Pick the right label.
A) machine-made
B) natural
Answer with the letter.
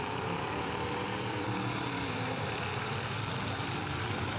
A